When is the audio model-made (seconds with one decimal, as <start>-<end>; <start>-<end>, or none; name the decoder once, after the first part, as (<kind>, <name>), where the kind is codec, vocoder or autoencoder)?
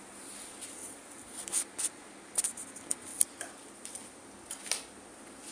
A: 0.8-1.7 (vocoder, BigVGAN v2)